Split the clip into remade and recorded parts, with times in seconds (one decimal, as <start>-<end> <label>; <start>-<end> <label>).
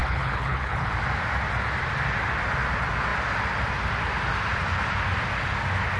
0.0-0.9 remade; 0.9-6.0 recorded